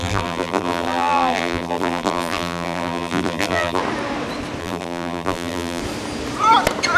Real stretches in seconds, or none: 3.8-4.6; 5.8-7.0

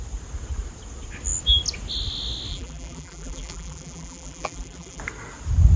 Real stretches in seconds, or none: 0.0-2.5; 5.0-5.8